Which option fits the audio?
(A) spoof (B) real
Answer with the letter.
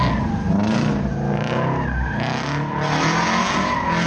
B